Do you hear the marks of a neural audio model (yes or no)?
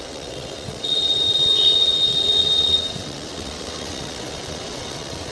yes